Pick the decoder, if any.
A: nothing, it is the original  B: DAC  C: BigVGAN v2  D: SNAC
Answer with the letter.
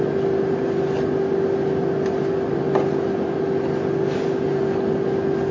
A